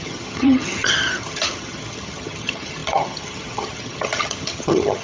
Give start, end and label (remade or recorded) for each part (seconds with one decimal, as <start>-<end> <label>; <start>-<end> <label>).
0.0-5.0 remade